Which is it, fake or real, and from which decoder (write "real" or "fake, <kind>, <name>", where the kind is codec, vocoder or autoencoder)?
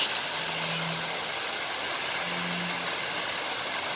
real